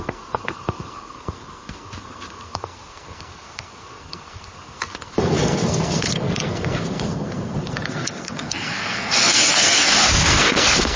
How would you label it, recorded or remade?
remade